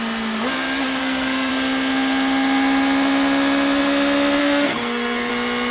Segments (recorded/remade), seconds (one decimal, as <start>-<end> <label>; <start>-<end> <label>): 0.0-1.0 recorded; 1.0-1.5 remade; 1.5-4.4 recorded; 4.4-5.3 remade; 5.3-5.7 recorded